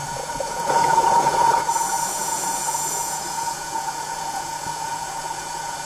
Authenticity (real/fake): fake